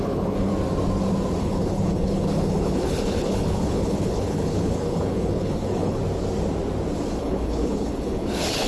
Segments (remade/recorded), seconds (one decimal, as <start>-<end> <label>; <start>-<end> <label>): 0.0-0.5 remade; 0.5-1.4 recorded; 1.4-6.0 remade; 6.0-7.1 recorded; 7.1-8.7 remade